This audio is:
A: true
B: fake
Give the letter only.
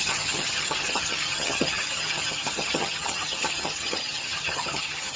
B